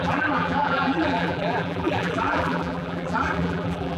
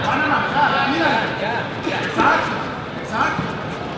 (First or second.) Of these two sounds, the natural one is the second